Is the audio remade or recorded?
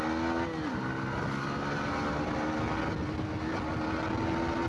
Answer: recorded